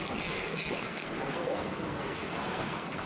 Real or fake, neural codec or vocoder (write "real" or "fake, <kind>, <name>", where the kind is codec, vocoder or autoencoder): fake, codec, SNAC